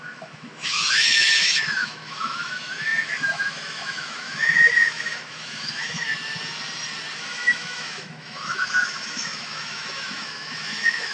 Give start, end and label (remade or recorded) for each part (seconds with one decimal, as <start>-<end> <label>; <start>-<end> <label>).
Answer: 0.0-6.1 remade; 6.1-7.2 recorded; 7.2-11.1 remade